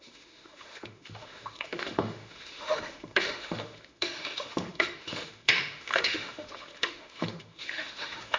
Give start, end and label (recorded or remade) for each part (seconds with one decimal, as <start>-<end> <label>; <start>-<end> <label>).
0.0-8.4 remade